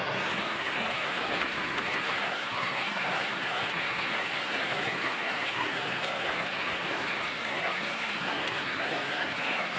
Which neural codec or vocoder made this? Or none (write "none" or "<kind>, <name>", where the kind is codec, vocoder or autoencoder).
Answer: codec, SNAC